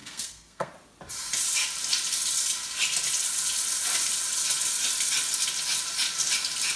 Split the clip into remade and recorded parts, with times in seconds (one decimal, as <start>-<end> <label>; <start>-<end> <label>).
0.0-0.7 remade; 0.7-6.8 recorded